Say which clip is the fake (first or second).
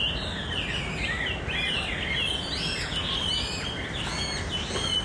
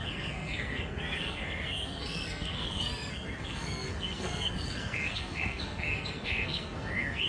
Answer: second